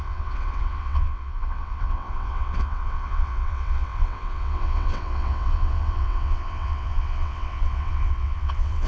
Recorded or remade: remade